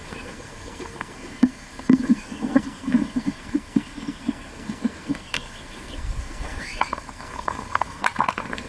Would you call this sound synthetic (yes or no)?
yes